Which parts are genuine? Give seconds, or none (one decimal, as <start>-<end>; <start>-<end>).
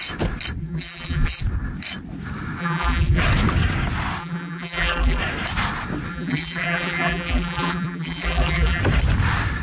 0.0-0.6; 1.4-2.6; 3.2-4.2; 5.2-6.1; 8.8-9.6